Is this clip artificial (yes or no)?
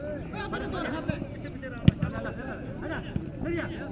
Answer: no